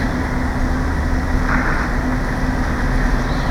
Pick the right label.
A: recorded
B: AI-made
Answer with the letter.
A